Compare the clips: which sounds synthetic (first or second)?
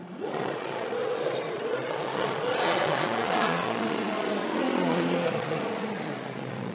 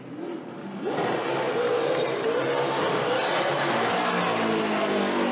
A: first